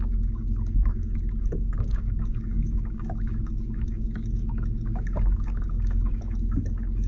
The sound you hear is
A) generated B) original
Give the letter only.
A